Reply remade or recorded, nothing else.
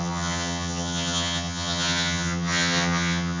remade